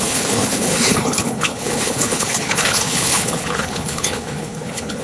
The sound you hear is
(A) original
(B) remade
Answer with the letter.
B